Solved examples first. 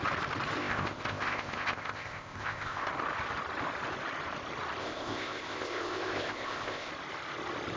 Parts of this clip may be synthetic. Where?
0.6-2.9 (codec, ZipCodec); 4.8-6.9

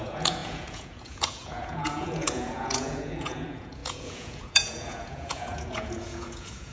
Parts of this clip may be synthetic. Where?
0.0-6.7 (vocoder, Vocos)

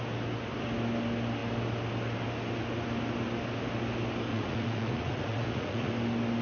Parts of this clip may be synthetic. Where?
4.3-5.9 (vocoder, Vocos)

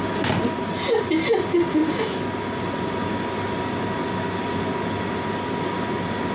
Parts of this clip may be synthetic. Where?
none

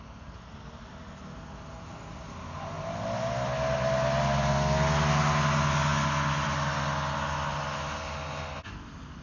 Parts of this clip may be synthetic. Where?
none